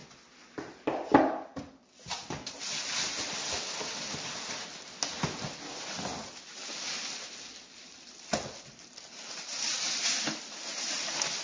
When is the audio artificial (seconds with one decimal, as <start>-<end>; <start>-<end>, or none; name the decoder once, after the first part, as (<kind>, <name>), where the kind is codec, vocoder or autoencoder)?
none